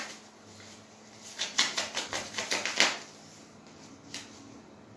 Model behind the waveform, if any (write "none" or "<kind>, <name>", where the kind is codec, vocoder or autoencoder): none